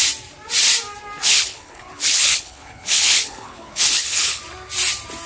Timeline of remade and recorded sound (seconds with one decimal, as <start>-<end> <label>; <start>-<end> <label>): 0.0-1.2 recorded; 1.2-4.4 remade; 4.4-5.3 recorded